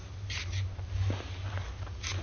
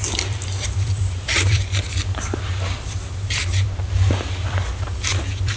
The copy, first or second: second